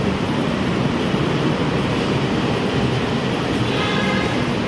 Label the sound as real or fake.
fake